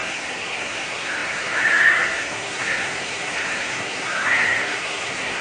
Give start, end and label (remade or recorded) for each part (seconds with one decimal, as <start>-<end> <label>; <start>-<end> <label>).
0.0-5.4 remade